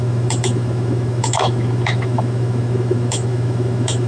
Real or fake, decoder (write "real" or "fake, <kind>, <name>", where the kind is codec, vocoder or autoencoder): fake, autoencoder, DAC-VAE